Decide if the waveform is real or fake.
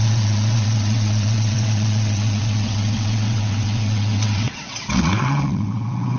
fake